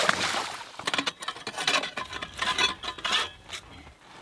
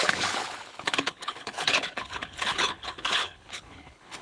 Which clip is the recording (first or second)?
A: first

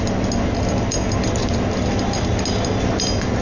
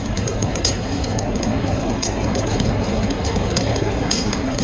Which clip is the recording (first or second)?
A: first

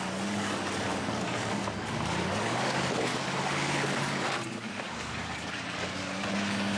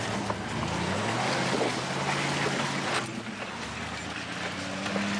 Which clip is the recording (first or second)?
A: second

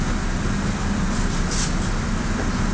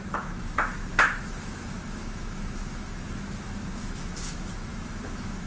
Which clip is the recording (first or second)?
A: first